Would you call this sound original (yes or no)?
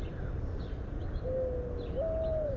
yes